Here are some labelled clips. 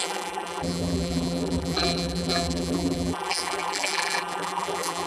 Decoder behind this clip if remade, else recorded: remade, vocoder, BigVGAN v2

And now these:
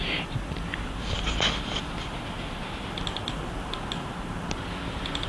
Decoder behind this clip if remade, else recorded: recorded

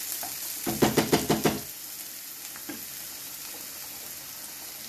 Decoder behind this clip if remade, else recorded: recorded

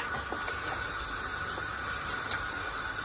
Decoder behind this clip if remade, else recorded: recorded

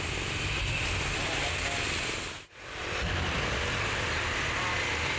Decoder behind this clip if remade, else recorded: recorded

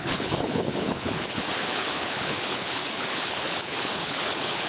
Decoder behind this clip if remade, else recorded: remade, codec, HILCodec